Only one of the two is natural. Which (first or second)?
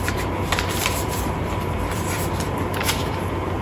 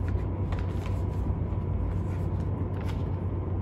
second